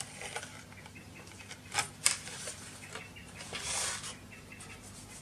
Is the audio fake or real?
real